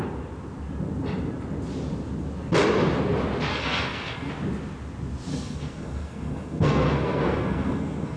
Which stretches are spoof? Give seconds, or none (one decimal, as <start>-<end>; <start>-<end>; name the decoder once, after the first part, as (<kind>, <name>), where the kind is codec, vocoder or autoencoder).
3.5-4.3 (codec, SNAC); 5.3-8.2